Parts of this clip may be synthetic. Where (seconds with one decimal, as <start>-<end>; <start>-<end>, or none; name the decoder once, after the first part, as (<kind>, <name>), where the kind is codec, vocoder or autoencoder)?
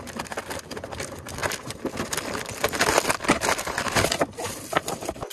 none